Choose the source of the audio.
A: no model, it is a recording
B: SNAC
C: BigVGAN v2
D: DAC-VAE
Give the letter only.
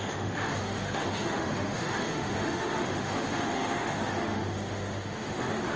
D